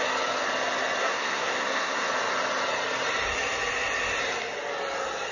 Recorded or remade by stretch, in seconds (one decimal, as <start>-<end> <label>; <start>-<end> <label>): 0.0-1.0 recorded; 1.0-2.1 remade; 2.1-5.3 recorded